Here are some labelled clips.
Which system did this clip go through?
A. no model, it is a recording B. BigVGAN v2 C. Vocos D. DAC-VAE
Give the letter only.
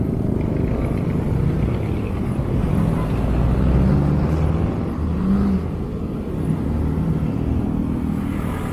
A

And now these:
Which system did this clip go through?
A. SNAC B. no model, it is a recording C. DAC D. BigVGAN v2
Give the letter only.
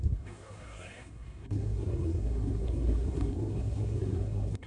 A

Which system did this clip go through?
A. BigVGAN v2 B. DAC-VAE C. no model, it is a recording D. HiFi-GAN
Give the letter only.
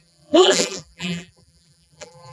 A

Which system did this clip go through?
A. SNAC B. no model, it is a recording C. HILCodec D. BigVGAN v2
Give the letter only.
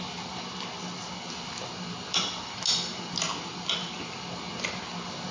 B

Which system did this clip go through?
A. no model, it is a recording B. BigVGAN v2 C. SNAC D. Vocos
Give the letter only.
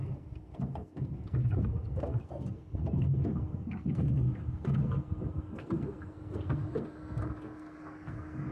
C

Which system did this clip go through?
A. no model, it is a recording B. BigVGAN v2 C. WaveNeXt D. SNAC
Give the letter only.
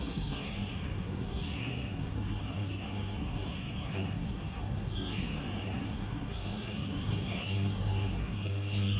D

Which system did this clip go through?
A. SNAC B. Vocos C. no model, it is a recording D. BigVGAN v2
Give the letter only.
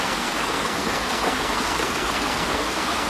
A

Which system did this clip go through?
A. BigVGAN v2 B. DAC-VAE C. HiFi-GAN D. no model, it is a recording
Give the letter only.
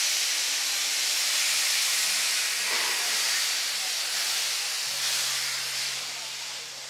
D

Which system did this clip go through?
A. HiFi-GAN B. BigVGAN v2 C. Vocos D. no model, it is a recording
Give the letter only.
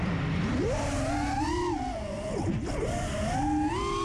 D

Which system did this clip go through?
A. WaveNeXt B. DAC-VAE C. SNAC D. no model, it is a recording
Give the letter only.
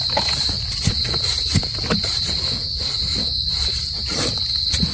D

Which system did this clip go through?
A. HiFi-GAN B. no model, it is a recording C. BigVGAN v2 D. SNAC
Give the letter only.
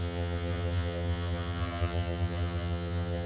A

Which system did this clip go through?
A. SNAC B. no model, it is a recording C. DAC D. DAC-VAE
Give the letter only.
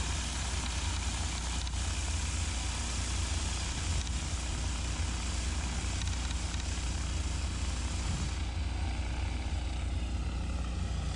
B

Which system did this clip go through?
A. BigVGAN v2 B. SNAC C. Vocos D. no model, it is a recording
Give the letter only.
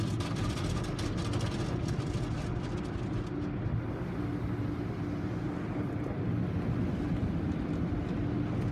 D